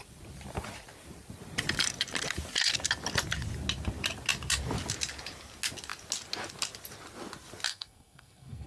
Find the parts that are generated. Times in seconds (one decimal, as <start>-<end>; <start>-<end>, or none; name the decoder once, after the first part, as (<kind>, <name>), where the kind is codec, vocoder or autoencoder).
7.7-8.7 (codec, SNAC)